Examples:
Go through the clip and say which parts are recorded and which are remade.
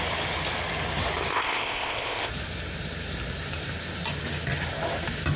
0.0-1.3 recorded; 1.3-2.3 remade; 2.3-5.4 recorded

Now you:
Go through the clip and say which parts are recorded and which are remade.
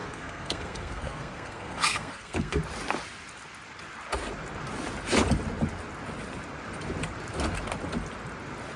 0.0-2.6 remade; 2.6-8.8 recorded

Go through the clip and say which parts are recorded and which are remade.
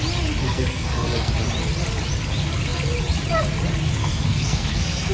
0.0-0.4 recorded; 0.4-1.3 remade; 1.3-4.0 recorded; 4.0-5.1 remade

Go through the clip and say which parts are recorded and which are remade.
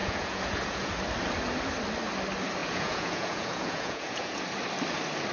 0.0-0.9 remade; 0.9-2.6 recorded; 2.6-4.4 remade; 4.4-5.3 recorded